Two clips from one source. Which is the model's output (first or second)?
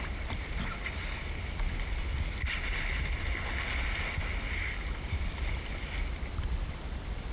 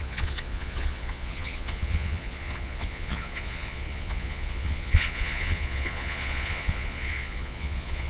second